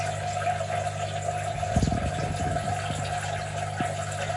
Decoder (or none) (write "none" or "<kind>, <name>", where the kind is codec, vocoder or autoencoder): none